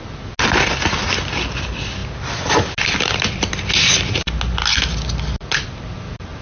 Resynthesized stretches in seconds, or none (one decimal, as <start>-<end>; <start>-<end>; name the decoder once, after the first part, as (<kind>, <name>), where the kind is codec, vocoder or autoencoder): none